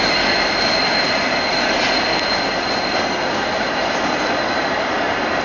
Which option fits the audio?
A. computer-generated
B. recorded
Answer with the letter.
B